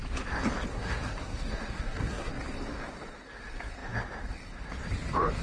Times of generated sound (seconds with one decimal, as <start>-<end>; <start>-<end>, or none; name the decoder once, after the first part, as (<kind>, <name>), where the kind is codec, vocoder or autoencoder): 0.7-2.3 (codec, SNAC)